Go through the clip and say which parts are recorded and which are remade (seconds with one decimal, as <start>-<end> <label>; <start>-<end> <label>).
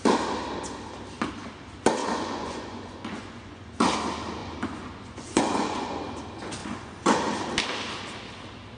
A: 0.0-2.0 recorded; 2.0-3.7 remade; 3.7-4.4 recorded; 4.4-6.0 remade; 6.0-6.6 recorded; 6.6-7.2 remade; 7.2-8.8 recorded